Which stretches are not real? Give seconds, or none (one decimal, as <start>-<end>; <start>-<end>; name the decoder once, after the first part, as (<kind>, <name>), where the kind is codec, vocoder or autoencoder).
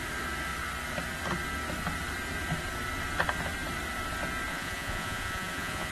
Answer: 4.5-5.9 (vocoder, Vocos)